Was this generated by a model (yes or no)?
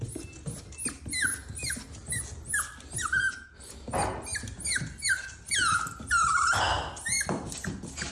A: no